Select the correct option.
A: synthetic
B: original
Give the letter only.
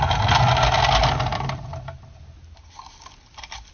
B